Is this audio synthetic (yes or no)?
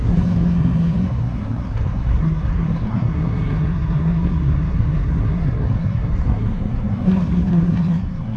yes